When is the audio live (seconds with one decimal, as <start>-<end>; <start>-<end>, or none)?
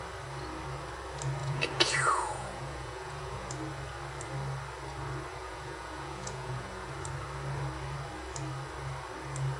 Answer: 0.0-1.4; 3.5-5.3; 6.9-9.6